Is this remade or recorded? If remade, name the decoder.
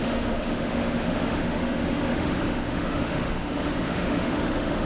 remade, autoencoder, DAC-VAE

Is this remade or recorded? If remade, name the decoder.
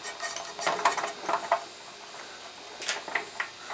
recorded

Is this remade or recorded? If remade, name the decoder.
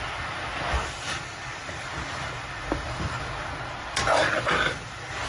recorded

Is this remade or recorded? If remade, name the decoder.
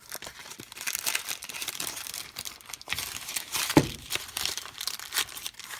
remade, vocoder, BigVGAN v2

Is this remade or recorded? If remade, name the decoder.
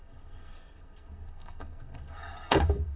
remade, codec, SNAC